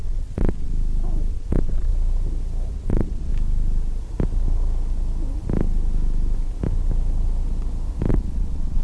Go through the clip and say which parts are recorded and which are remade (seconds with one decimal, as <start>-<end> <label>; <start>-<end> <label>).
0.0-0.7 remade; 0.7-1.3 recorded; 1.3-1.9 remade; 1.9-2.7 recorded; 2.7-3.3 remade; 3.3-8.1 recorded; 8.1-8.8 remade